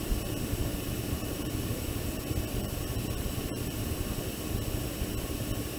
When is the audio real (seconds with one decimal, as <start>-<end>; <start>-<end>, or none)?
0.0-0.7; 3.8-5.8